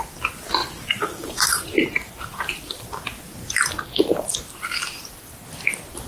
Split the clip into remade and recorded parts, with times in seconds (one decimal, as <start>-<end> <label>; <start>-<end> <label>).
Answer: 0.0-0.6 recorded; 0.6-2.5 remade; 2.5-6.1 recorded